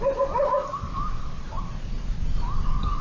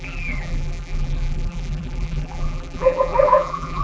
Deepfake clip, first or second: second